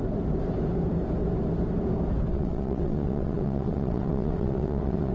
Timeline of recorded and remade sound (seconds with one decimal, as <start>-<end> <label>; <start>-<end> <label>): 0.0-2.3 recorded; 2.3-5.1 remade